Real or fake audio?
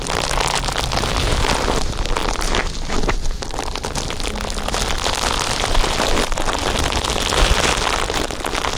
real